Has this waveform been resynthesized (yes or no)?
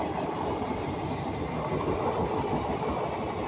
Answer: no